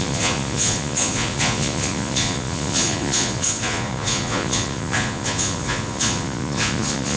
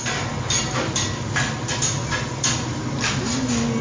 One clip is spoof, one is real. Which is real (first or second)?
second